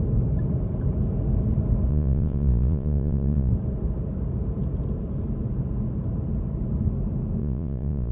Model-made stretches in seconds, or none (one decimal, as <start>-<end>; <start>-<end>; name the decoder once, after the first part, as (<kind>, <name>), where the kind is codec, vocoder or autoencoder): 1.9-3.5 (vocoder, Vocos); 7.4-8.1